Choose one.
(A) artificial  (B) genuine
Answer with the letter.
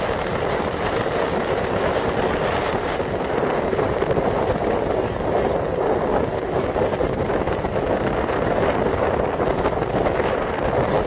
B